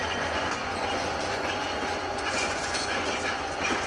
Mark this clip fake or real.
fake